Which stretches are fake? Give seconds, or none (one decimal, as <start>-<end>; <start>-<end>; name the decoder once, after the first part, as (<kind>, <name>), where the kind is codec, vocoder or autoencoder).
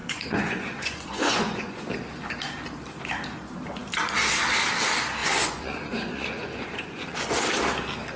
0.0-1.8 (vocoder, Vocos); 5.2-7.4